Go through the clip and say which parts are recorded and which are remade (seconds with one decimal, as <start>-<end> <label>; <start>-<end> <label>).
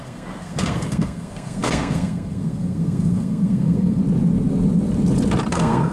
0.0-4.0 remade; 4.0-5.5 recorded; 5.5-5.9 remade